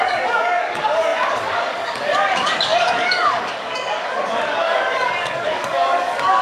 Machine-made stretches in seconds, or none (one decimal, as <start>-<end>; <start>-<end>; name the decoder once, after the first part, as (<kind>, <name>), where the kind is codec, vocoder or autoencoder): 0.0-6.4 (codec, DAC)